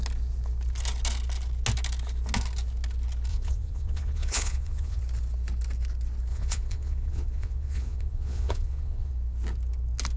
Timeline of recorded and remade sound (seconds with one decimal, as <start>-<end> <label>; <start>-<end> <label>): 0.0-3.3 recorded; 3.3-5.0 remade; 5.0-6.3 recorded; 6.3-9.1 remade; 9.1-10.2 recorded